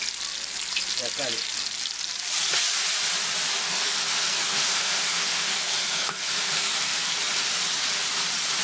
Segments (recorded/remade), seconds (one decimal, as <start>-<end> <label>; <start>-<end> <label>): 0.0-3.7 recorded; 3.7-7.1 remade; 7.1-8.6 recorded